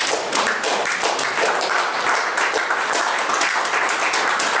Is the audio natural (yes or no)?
yes